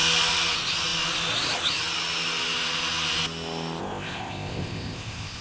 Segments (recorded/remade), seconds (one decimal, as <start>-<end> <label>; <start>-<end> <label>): 0.0-3.8 recorded; 3.8-5.4 remade